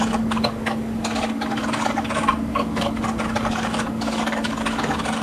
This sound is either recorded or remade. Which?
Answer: remade